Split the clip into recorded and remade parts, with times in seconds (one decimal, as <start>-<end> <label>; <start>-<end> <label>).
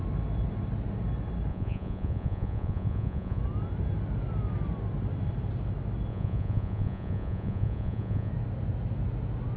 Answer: 0.0-1.5 recorded; 1.5-3.4 remade; 3.4-6.1 recorded; 6.1-8.3 remade; 8.3-9.6 recorded